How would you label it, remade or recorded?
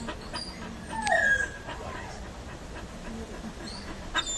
recorded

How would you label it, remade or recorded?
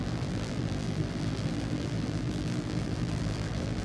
remade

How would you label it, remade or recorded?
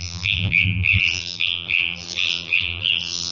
remade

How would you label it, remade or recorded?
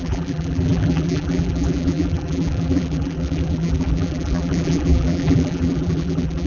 remade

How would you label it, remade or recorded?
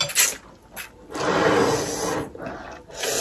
recorded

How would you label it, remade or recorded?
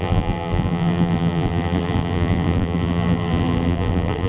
remade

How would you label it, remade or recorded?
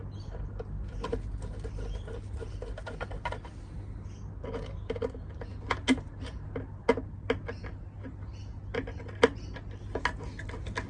recorded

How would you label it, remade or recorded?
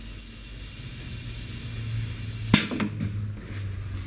recorded